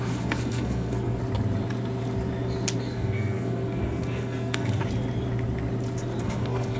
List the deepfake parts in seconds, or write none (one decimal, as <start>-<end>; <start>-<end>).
0.0-1.2; 2.8-4.8; 6.2-6.8